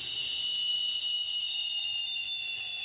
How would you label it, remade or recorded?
recorded